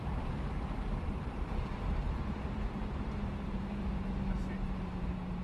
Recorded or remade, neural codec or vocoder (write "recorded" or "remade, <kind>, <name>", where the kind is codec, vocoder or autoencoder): remade, vocoder, BigVGAN v2